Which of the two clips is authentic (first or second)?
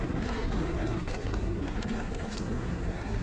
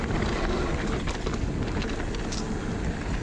second